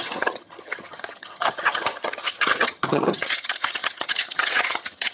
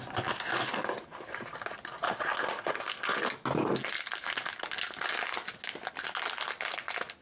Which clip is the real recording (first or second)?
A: second